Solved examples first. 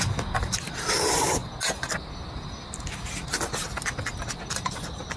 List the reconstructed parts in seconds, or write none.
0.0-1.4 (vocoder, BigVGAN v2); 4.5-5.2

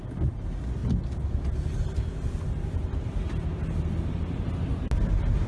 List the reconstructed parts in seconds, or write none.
none